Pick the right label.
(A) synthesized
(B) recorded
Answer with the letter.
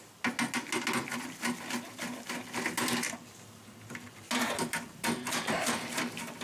B